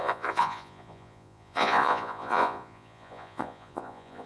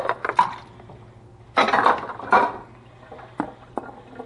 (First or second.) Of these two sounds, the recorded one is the second